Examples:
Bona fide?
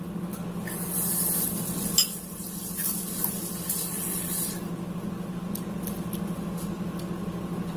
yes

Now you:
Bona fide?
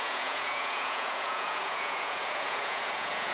no